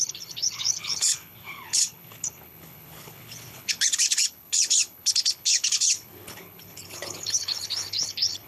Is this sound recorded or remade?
remade